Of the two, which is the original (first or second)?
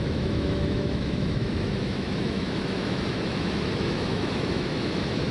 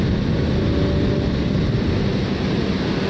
second